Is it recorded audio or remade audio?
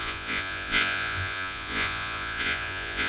remade